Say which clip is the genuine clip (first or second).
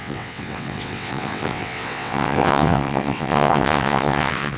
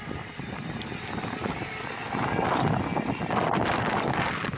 second